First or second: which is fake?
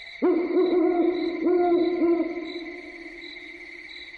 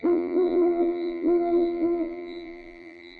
second